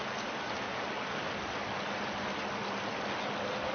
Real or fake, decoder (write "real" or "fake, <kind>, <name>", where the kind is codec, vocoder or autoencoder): real